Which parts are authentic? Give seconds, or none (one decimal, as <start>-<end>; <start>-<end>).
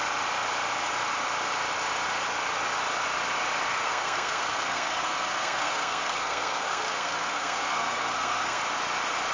0.0-3.7; 8.6-9.3